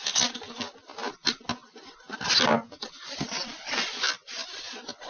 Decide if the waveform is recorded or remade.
recorded